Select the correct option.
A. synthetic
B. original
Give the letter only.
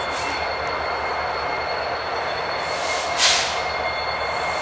B